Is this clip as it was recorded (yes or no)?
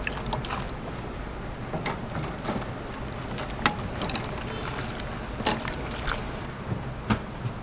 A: yes